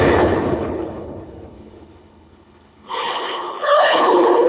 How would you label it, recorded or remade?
remade